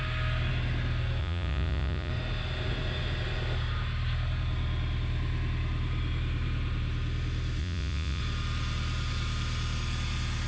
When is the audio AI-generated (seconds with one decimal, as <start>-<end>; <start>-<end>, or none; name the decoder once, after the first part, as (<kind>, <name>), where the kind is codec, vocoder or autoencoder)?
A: 1.2-2.1 (vocoder, Vocos); 7.6-8.2